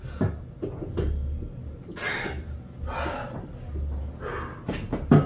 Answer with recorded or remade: recorded